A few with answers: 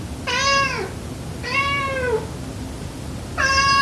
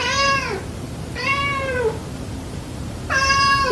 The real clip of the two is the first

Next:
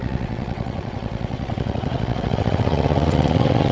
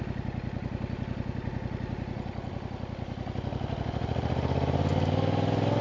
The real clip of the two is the second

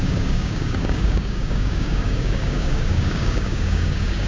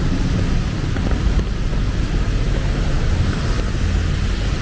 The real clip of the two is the second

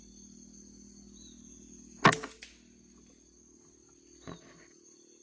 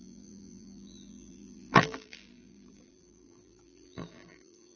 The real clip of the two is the first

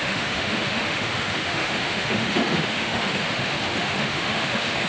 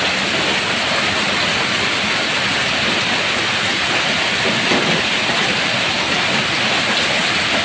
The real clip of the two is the second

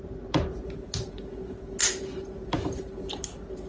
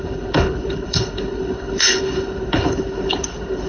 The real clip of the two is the first